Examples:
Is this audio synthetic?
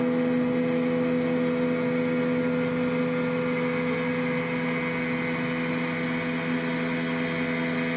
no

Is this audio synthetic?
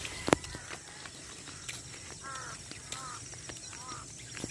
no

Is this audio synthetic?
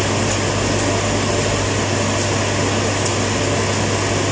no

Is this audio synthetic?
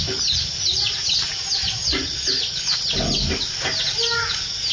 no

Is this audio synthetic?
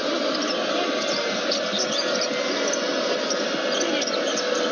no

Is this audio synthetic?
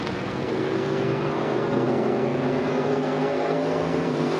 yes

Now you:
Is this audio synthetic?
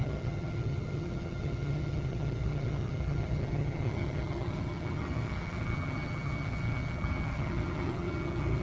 yes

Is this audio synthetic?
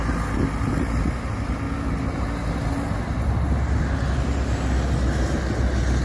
no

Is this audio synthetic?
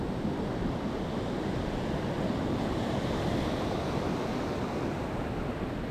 no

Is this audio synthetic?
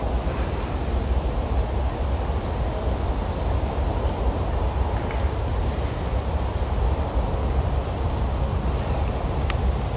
no